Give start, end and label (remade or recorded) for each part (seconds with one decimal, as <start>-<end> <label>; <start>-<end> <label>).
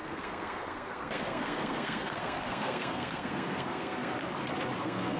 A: 0.0-4.1 remade; 4.1-4.8 recorded; 4.8-5.2 remade